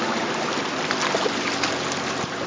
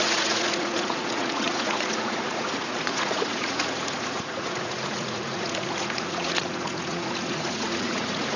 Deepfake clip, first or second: second